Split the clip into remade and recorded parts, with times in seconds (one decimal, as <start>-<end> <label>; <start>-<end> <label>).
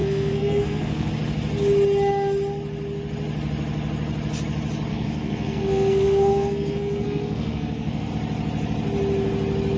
0.0-1.1 remade; 1.1-4.9 recorded; 4.9-8.1 remade; 8.1-9.8 recorded